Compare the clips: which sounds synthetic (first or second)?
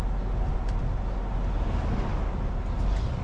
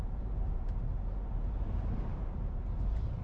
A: second